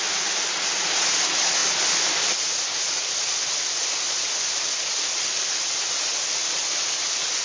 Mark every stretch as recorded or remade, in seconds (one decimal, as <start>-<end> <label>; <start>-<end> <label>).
0.0-7.4 recorded